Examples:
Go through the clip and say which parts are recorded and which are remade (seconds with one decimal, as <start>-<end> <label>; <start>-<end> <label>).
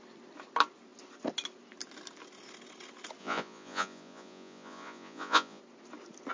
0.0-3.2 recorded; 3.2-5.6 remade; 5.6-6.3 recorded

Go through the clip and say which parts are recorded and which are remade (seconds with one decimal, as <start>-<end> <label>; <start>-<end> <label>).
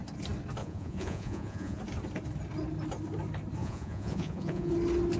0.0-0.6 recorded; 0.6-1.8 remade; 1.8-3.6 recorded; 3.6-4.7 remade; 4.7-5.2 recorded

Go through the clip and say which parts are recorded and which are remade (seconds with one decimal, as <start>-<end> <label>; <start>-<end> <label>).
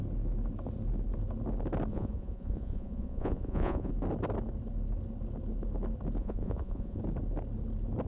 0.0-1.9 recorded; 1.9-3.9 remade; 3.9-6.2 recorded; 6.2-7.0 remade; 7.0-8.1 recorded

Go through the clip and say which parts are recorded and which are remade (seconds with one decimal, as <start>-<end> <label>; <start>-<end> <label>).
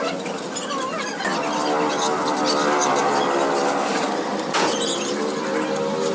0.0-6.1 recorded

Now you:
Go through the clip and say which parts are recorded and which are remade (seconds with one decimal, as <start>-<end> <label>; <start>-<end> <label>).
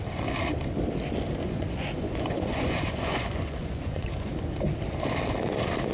0.0-1.4 recorded; 1.4-4.3 remade; 4.3-5.9 recorded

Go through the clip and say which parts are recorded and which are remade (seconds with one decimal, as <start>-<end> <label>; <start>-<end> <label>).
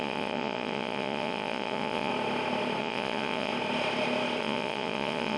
0.0-2.1 remade; 2.1-2.8 recorded; 2.8-3.5 remade; 3.5-4.4 recorded; 4.4-5.4 remade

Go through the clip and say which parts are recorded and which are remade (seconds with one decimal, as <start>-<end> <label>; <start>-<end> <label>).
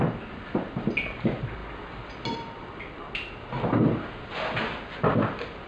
0.0-5.7 recorded